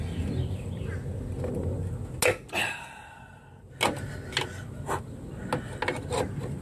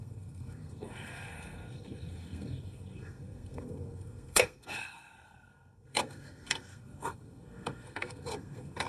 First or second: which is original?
first